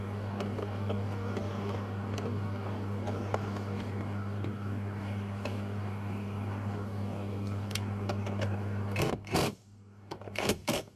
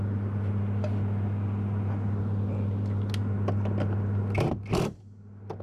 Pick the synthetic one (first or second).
first